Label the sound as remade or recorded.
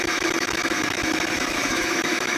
remade